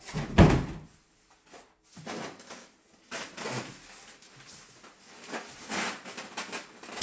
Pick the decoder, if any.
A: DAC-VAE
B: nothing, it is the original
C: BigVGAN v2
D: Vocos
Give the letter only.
B